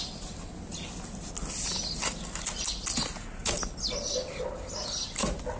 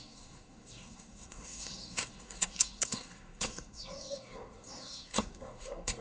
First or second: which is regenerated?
second